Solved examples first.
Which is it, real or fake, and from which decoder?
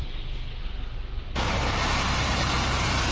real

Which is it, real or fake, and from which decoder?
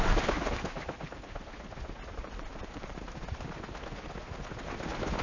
real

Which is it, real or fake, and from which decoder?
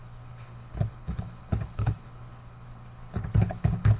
fake, codec, HILCodec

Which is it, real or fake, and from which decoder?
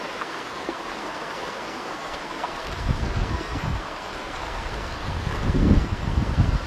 fake, codec, SNAC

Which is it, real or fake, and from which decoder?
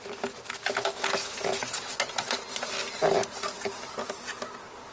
real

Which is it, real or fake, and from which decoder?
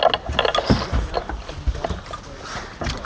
real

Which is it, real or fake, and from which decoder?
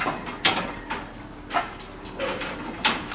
fake, vocoder, BigVGAN v2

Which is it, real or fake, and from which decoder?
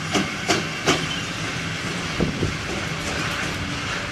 real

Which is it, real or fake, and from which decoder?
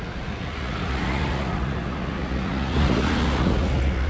fake, vocoder, Vocos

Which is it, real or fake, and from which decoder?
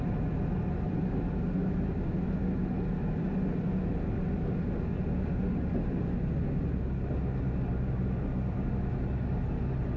real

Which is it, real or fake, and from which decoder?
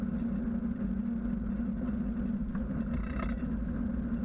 real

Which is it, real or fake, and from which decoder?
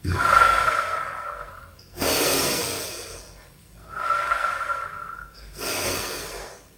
fake, codec, SNAC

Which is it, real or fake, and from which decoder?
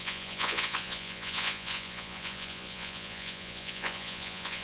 fake, vocoder, Vocos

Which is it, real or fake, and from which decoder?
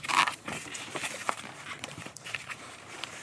fake, vocoder, BigVGAN v2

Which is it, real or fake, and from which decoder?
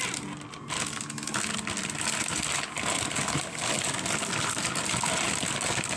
real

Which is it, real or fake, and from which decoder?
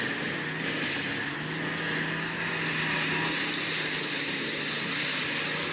real